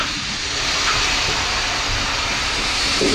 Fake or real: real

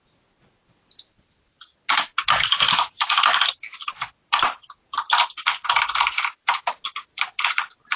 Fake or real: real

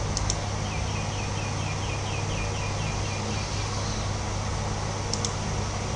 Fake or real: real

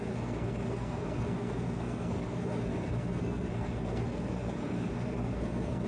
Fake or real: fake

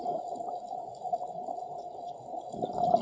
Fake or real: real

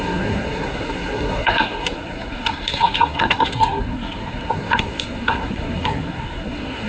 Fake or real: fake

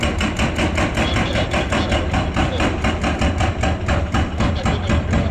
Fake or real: real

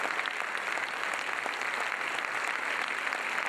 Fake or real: real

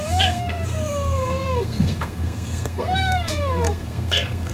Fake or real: fake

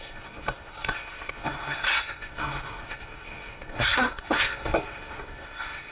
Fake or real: fake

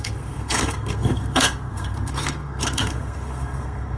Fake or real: fake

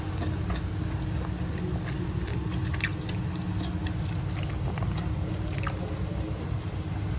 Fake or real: real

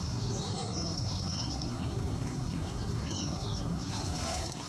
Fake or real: fake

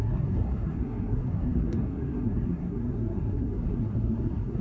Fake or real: fake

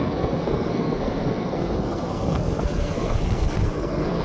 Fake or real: fake